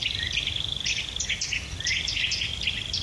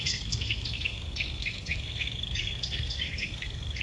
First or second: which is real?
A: first